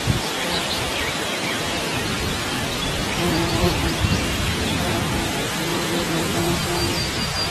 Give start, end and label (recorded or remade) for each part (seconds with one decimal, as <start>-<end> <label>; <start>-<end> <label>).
0.0-0.4 recorded; 0.4-1.7 remade; 1.7-3.0 recorded; 3.0-3.7 remade; 3.7-7.5 recorded